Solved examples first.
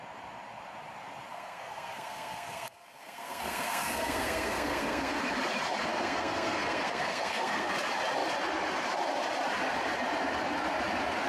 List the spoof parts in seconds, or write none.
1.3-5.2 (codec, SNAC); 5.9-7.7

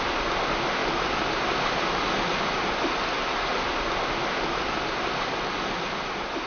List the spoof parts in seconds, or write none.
none

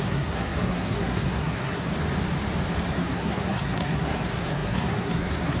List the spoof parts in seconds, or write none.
0.0-1.9 (codec, SNAC); 3.0-5.6